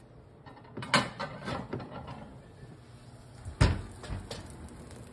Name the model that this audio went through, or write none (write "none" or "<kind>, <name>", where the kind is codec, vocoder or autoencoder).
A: none